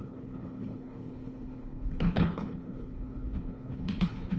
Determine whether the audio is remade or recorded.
remade